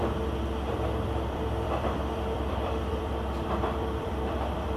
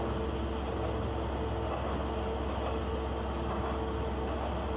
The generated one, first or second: first